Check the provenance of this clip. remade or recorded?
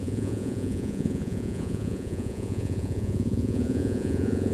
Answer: remade